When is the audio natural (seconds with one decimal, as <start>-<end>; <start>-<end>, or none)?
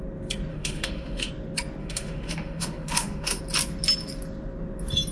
0.0-0.5; 1.3-1.8; 3.4-5.1